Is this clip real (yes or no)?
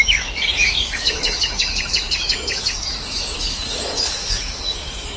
no